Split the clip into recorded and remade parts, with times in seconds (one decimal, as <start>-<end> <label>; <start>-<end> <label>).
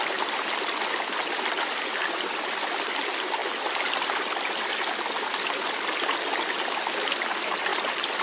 0.0-8.2 recorded